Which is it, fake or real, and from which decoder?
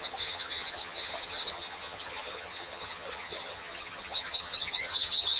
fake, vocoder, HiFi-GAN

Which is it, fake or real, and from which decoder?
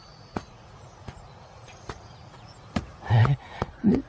fake, vocoder, Vocos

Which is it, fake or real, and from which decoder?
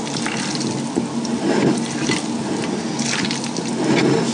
real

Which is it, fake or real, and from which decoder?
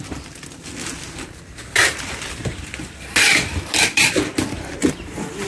real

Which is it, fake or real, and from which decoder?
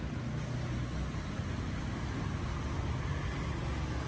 real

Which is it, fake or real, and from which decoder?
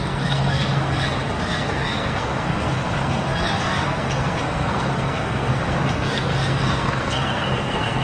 fake, codec, SNAC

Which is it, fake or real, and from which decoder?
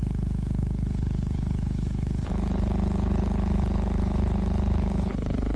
fake, codec, HILCodec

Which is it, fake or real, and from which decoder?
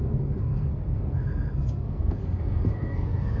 fake, codec, SNAC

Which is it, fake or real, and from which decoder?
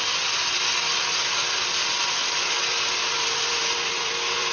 real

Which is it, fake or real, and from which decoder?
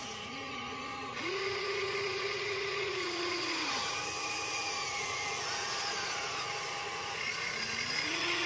fake, vocoder, Vocos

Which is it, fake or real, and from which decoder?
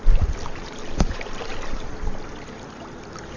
real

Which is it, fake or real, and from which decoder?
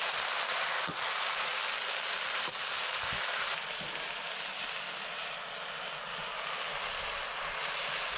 real